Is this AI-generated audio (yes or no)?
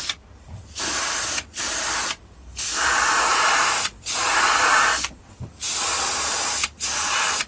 yes